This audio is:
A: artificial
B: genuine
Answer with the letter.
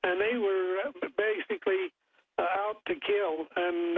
B